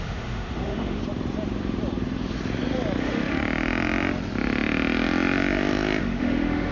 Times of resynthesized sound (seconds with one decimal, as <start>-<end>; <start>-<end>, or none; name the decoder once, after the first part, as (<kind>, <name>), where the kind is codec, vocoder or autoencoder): 0.0-1.0 (autoencoder, DAC-VAE); 3.0-3.4; 6.0-6.7